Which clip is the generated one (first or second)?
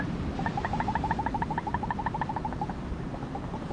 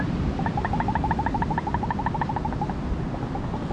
first